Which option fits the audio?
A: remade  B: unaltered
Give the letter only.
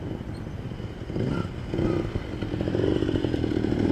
A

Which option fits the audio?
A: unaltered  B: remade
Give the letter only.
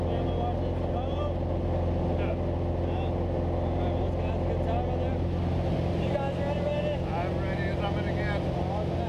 A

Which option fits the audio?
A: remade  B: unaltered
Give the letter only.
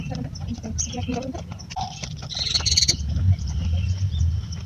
A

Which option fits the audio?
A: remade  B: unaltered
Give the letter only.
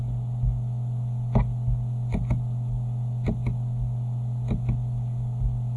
B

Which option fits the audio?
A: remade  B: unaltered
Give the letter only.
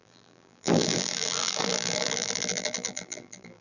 A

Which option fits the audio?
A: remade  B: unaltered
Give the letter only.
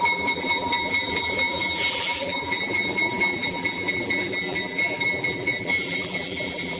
A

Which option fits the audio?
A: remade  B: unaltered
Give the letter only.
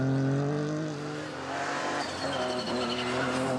B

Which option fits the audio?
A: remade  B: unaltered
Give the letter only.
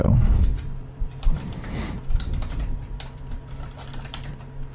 A